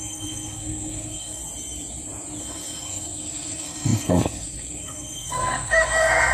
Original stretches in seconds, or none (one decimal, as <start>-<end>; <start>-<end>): 1.4-2.4